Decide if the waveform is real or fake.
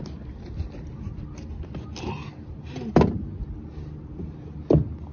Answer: real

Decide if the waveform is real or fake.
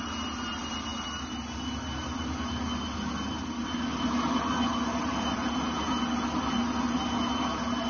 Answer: real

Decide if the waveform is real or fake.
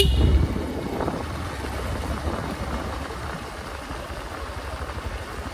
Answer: real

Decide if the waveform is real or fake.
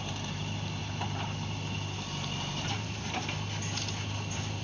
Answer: real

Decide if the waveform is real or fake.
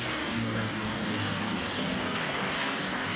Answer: fake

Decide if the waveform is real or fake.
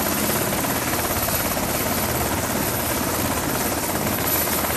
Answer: real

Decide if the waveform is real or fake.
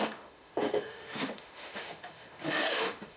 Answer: fake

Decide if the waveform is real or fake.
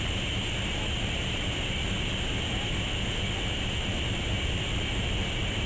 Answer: real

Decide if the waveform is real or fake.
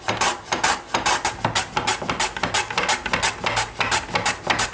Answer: real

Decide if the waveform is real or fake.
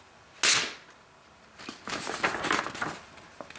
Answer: real